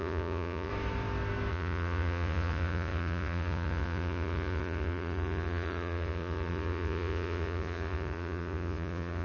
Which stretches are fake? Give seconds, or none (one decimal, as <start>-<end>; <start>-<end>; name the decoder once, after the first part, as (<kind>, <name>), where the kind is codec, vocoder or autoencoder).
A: 0.0-0.7 (vocoder, Vocos); 1.5-9.2